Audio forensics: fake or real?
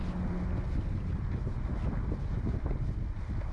real